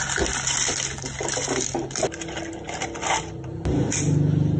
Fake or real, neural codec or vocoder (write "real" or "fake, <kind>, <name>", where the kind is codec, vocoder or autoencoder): real